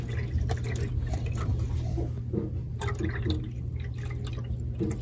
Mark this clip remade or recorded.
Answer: recorded